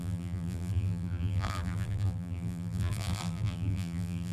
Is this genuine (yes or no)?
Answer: no